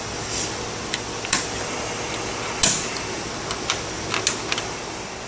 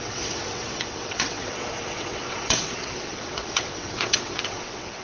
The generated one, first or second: second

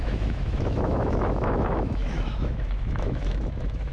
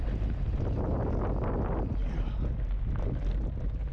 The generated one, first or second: first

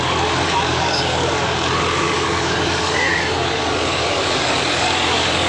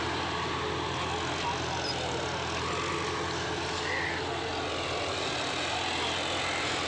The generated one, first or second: first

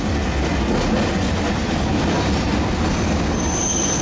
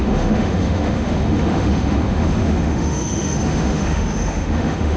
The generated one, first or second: second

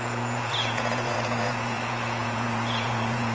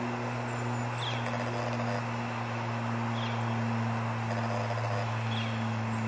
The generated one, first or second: first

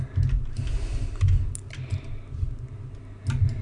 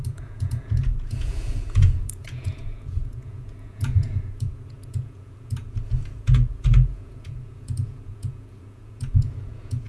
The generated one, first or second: second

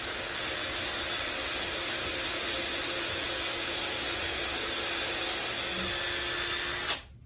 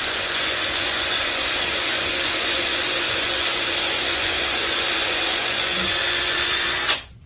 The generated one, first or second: second